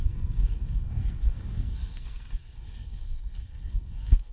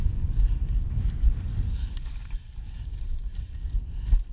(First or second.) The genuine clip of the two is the second